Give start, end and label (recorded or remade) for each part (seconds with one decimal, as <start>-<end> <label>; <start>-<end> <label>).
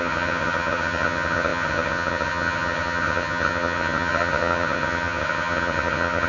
0.0-6.3 remade